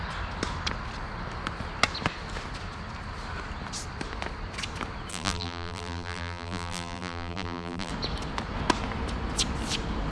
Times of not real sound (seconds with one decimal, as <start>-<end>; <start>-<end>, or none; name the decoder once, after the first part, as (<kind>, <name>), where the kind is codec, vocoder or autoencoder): 5.1-7.9 (vocoder, BigVGAN v2)